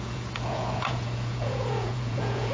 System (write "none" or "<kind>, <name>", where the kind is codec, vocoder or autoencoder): vocoder, Vocos